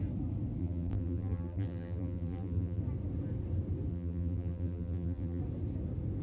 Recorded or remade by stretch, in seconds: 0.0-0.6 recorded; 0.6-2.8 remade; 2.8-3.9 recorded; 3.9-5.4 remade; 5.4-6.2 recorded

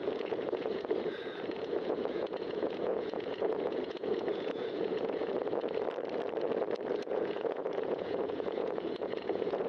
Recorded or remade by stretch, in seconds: 0.0-5.3 remade; 5.3-7.0 recorded; 7.0-9.7 remade

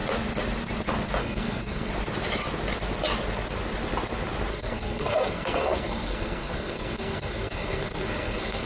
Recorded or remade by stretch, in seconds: 0.0-1.2 recorded; 1.2-1.9 remade; 1.9-4.5 recorded; 4.5-8.7 remade

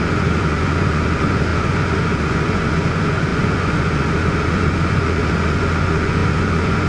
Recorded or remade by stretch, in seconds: 0.0-6.9 remade

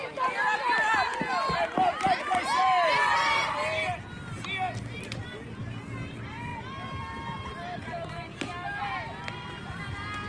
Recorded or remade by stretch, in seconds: 0.0-10.3 recorded

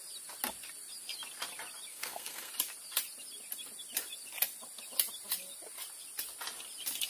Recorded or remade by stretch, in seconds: 0.0-1.9 recorded; 1.9-2.5 remade; 2.5-7.1 recorded